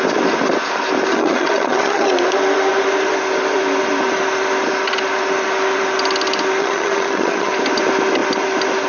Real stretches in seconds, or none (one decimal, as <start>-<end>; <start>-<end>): 0.0-1.1; 2.1-6.6; 7.5-8.9